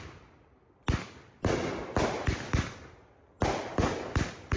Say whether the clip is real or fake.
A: real